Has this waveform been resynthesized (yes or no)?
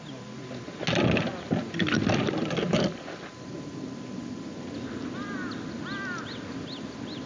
no